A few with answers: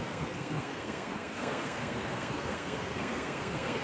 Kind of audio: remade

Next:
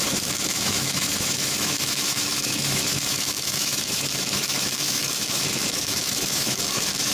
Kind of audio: remade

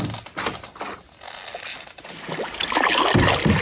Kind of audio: recorded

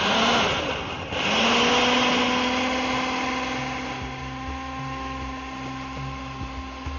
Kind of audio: recorded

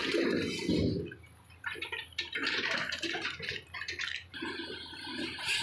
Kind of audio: recorded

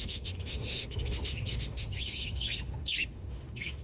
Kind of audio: remade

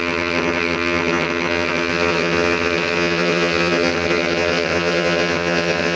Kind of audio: remade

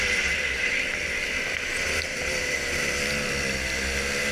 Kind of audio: recorded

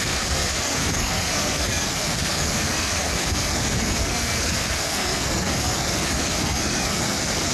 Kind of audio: remade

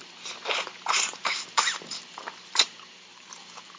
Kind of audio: remade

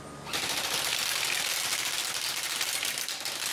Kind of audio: recorded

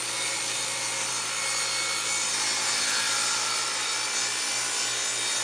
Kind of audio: recorded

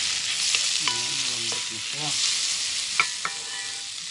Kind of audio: recorded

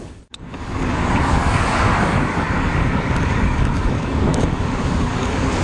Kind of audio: remade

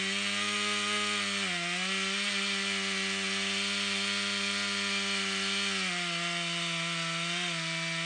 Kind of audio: recorded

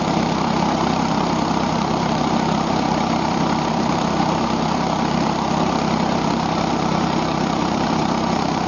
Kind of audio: remade